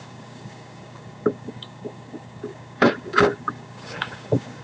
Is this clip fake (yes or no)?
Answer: yes